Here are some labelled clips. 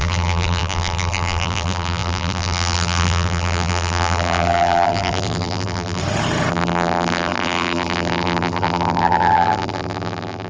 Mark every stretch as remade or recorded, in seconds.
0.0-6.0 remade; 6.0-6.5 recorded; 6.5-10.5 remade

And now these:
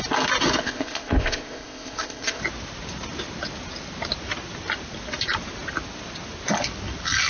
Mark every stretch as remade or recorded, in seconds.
0.0-0.6 recorded; 0.6-2.4 remade; 2.4-7.3 recorded

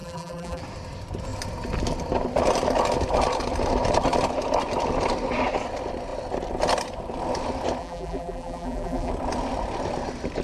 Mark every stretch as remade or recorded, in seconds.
0.0-0.6 remade; 0.6-7.8 recorded; 7.8-9.1 remade; 9.1-10.4 recorded

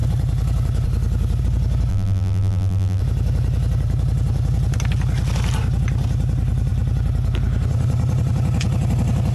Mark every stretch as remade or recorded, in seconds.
0.0-1.9 recorded; 1.9-3.0 remade; 3.0-9.3 recorded

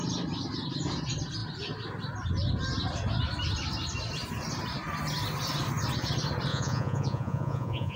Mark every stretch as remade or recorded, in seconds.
0.0-6.5 recorded; 6.5-8.0 remade

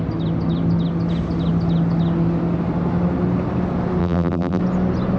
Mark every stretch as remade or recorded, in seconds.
0.0-4.0 recorded; 4.0-4.6 remade; 4.6-5.2 recorded